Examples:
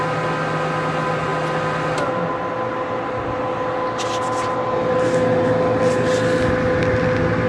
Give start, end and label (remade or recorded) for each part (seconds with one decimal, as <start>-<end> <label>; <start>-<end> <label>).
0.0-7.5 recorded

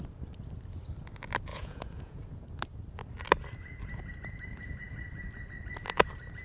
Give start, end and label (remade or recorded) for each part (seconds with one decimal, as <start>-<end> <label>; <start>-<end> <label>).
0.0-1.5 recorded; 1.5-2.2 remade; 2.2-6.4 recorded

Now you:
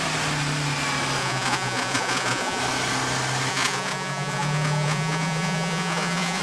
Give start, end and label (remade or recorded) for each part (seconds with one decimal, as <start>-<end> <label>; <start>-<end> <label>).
0.0-1.2 recorded; 1.2-2.6 remade; 2.6-3.5 recorded; 3.5-6.4 remade

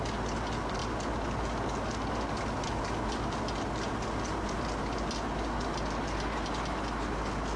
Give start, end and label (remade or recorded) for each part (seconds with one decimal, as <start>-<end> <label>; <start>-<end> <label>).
0.0-7.6 recorded

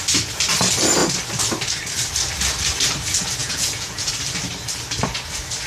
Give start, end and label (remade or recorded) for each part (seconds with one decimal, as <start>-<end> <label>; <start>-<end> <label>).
0.0-3.4 recorded; 3.4-4.1 remade; 4.1-5.7 recorded

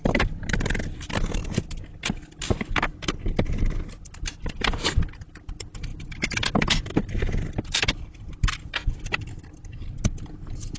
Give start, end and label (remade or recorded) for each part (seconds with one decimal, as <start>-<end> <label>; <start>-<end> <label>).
0.0-10.8 recorded